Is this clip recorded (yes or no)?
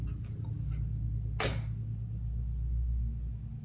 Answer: yes